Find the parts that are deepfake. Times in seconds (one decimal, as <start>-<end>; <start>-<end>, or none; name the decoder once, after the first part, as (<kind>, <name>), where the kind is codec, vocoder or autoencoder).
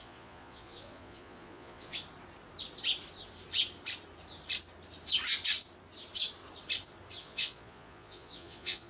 0.0-2.0 (vocoder, Vocos); 7.2-8.9